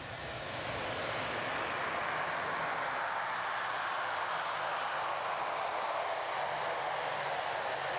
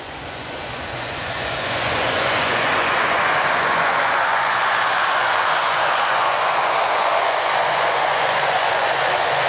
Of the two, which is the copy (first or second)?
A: second